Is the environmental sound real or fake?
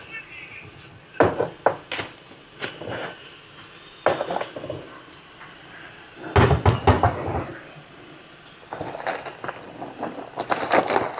real